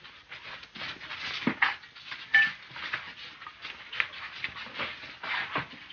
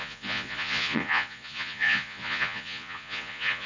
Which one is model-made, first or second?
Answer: second